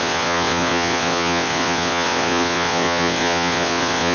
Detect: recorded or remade remade